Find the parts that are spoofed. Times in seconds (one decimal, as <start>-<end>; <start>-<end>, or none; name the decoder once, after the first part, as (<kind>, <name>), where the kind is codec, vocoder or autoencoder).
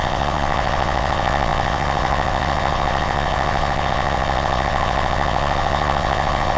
0.0-6.6 (vocoder, WaveNeXt)